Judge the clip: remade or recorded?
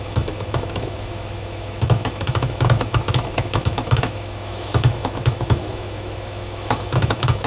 remade